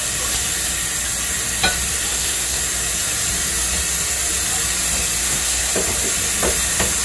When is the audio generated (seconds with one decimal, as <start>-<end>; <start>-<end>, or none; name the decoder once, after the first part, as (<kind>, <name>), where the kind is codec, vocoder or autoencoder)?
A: 2.1-2.6 (codec, SNAC); 5.2-5.7